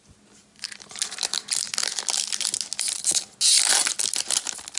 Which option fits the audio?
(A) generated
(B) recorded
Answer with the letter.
B